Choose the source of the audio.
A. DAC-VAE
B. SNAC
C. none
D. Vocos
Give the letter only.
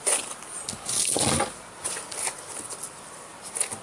C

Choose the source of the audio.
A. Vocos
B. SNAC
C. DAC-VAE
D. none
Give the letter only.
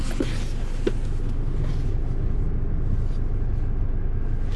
D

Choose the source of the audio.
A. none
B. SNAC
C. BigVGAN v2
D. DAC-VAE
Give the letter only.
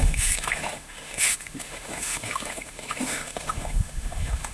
D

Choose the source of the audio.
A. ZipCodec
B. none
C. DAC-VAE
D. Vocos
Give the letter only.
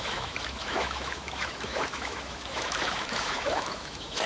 C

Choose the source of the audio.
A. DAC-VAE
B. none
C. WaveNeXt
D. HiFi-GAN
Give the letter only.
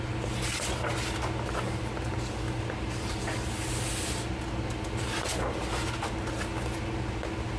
B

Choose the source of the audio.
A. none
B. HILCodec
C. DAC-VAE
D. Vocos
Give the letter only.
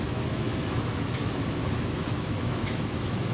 C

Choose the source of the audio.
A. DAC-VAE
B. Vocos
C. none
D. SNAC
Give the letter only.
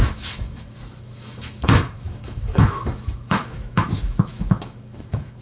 A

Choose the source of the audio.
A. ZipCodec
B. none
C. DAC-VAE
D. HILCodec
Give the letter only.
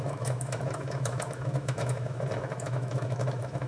C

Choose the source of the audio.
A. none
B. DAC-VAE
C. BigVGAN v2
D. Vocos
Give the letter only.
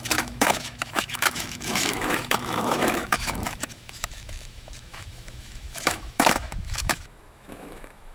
B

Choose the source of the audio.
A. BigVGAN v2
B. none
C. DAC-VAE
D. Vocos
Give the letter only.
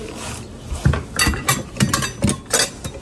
B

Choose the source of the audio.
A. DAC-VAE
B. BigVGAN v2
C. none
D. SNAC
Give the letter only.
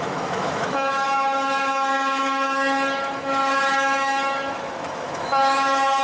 A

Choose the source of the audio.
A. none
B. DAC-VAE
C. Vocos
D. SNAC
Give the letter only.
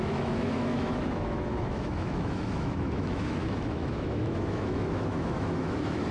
B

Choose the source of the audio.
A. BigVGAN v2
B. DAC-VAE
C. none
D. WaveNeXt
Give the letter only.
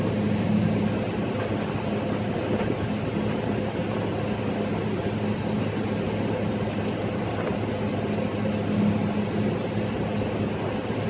C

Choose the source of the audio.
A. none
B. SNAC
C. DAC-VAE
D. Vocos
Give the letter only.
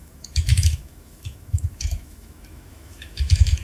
C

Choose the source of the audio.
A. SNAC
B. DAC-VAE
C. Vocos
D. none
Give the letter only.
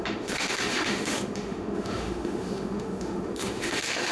B